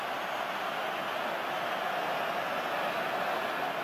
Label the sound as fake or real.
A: real